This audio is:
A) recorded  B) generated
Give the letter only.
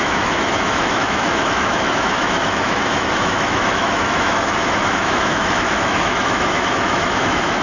B